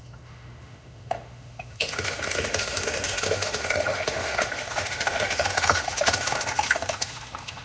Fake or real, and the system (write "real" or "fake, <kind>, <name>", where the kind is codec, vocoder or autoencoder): fake, autoencoder, DAC-VAE